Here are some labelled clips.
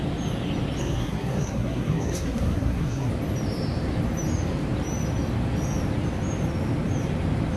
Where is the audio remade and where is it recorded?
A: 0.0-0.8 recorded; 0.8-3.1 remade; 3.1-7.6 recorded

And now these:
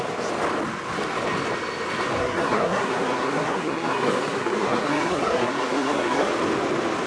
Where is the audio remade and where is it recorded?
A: 0.0-2.2 recorded; 2.2-6.3 remade; 6.3-7.1 recorded

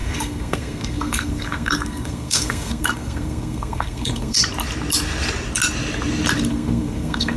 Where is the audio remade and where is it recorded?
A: 0.0-4.4 remade; 4.4-6.5 recorded; 6.5-7.4 remade

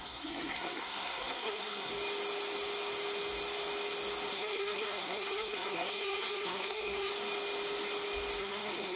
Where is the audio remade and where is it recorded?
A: 0.0-1.9 remade; 1.9-4.3 recorded; 4.3-7.1 remade; 7.1-8.4 recorded; 8.4-9.0 remade

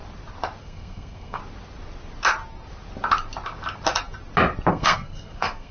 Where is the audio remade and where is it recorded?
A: 0.0-0.6 recorded; 0.6-1.4 remade; 1.4-4.7 recorded; 4.7-5.7 remade